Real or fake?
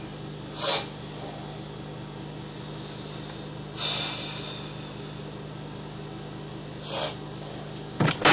real